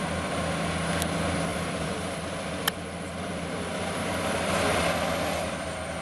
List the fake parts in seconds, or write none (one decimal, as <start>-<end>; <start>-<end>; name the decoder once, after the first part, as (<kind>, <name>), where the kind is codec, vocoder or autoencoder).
1.5-4.3 (vocoder, BigVGAN v2)